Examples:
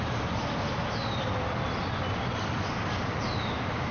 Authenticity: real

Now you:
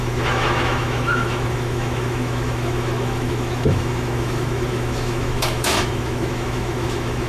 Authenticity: fake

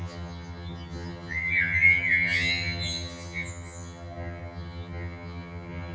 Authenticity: fake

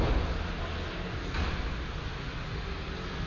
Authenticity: real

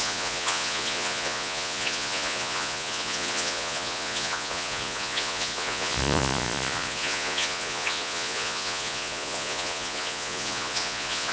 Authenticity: fake